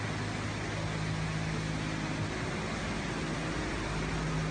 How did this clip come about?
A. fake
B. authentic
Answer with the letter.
B